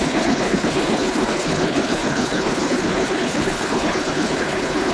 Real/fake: fake